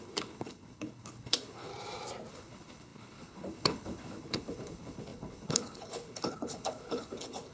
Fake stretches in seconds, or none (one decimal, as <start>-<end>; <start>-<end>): 0.0-1.7; 2.3-7.5